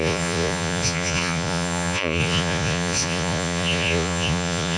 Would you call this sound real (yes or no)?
no